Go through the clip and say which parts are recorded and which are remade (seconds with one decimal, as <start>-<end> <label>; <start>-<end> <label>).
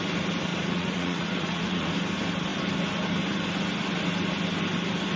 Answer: 0.0-0.5 recorded; 0.5-1.9 remade; 1.9-5.2 recorded